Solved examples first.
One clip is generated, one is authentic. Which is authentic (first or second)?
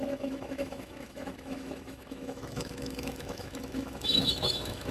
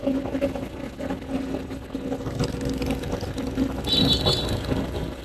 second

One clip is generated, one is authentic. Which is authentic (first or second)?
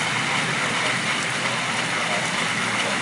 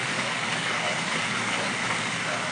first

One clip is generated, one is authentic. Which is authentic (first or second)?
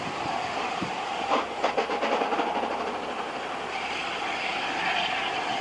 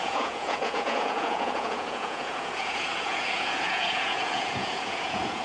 first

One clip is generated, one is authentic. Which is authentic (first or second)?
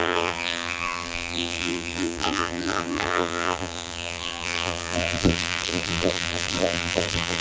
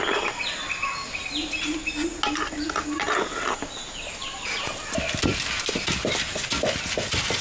second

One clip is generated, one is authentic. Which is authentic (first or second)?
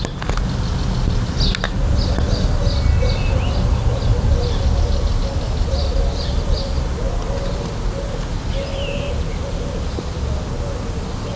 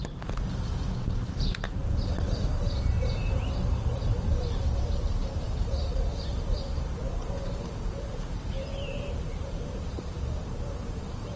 first